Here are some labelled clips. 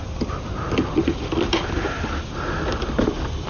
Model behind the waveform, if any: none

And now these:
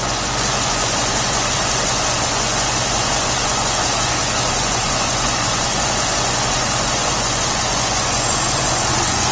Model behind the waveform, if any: vocoder, Vocos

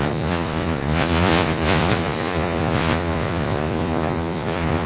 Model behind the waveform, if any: vocoder, Vocos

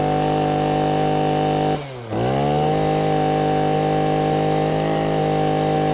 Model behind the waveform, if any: none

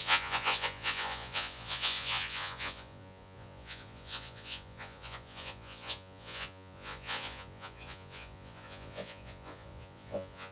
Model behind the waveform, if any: vocoder, Vocos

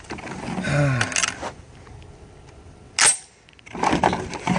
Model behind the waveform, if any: none